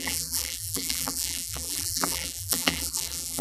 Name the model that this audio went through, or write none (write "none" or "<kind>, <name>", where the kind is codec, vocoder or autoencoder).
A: vocoder, BigVGAN v2